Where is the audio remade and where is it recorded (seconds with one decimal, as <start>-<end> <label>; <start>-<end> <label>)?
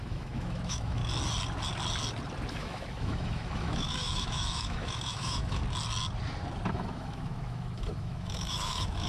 0.0-1.0 remade; 1.0-2.5 recorded; 2.5-5.6 remade; 5.6-6.7 recorded; 6.7-9.1 remade